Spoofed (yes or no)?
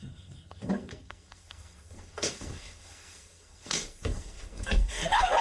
yes